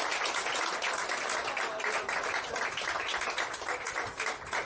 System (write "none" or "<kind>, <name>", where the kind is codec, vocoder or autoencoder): none